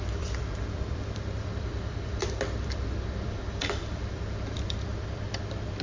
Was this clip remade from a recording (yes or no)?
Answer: yes